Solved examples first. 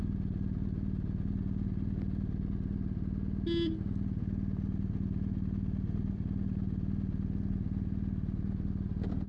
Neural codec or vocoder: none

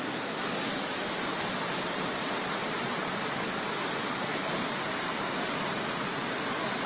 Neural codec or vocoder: none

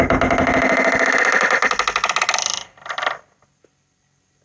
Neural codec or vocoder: none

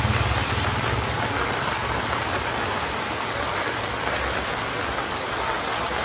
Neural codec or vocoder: none